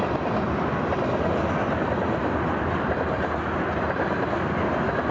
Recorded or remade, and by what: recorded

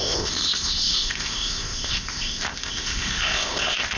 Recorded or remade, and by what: remade, codec, ZipCodec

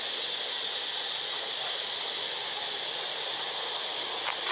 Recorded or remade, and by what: recorded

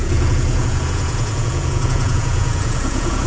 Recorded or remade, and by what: remade, vocoder, Vocos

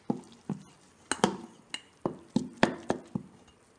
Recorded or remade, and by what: recorded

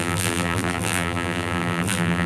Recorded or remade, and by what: remade, vocoder, BigVGAN v2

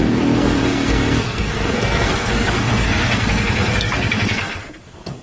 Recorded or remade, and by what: remade, codec, SNAC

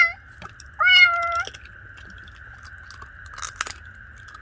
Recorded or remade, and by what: recorded